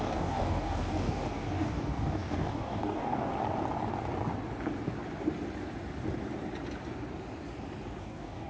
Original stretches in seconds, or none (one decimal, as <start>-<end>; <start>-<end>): 3.3-8.0